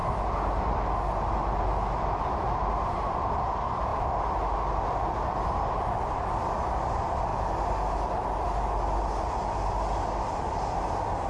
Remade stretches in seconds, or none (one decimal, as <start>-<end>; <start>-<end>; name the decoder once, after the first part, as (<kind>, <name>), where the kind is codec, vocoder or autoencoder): none